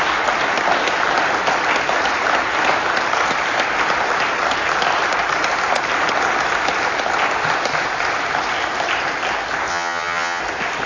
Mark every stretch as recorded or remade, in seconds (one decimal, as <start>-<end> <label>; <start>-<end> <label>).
0.0-9.7 recorded; 9.7-10.4 remade; 10.4-10.9 recorded